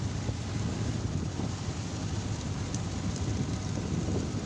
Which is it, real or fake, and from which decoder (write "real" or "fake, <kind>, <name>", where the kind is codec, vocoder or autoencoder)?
real